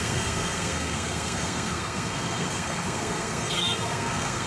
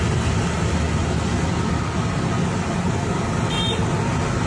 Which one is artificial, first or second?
first